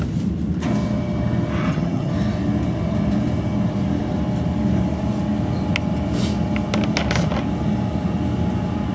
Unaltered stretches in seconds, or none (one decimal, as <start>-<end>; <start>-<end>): 0.0-1.6; 2.1-8.9